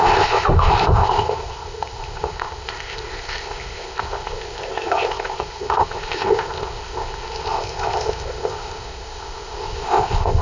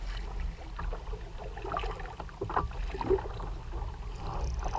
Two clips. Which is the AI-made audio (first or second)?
first